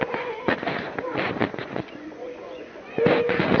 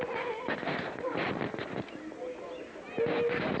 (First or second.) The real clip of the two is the second